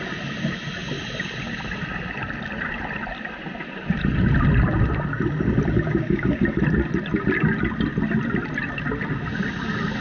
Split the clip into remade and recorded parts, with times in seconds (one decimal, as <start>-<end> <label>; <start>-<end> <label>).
0.0-10.0 recorded